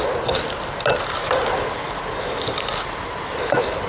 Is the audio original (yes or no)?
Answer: yes